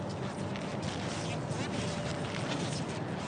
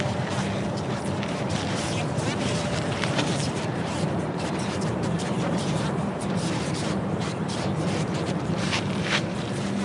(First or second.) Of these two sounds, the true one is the first